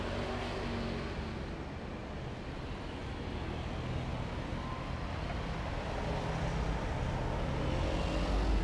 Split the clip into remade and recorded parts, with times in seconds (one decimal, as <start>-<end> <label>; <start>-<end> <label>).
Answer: 0.0-8.6 recorded